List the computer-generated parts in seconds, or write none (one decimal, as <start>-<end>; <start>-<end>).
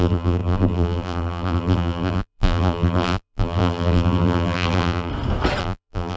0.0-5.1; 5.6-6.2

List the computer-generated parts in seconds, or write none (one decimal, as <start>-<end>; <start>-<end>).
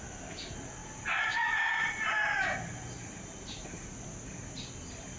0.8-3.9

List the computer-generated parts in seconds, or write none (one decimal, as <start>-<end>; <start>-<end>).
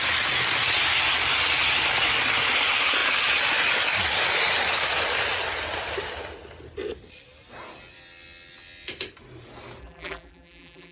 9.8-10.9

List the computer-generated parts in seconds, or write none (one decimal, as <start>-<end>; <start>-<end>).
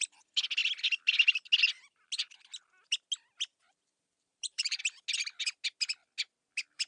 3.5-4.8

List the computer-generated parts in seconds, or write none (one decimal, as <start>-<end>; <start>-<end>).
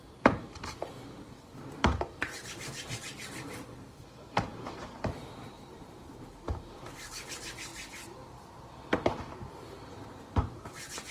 0.0-7.7; 9.2-11.1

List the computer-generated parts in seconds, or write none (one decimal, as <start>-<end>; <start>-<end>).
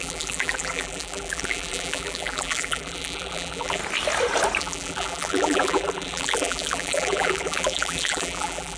0.0-3.8; 4.6-8.8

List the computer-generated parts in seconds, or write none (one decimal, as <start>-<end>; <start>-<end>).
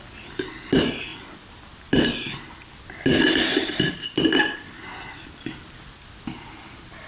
none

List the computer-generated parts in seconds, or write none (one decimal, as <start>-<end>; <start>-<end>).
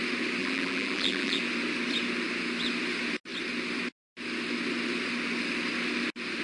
0.4-1.4